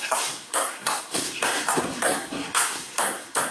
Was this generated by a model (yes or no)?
yes